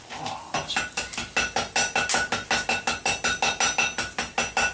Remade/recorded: recorded